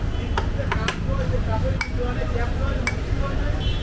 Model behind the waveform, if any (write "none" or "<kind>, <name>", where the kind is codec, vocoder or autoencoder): none